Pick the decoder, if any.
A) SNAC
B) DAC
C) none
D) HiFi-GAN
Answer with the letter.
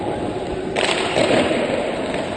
C